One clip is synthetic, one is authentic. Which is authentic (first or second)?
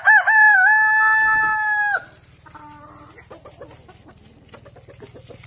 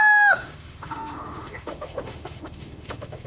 first